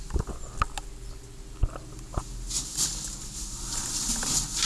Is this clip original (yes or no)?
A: yes